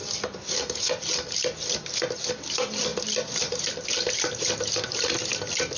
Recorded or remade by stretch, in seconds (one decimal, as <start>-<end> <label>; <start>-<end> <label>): 0.0-2.9 recorded; 2.9-4.4 remade; 4.4-5.8 recorded